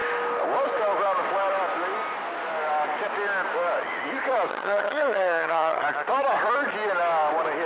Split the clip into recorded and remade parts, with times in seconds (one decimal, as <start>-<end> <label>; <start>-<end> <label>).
0.0-4.5 recorded; 4.5-5.8 remade; 5.8-7.7 recorded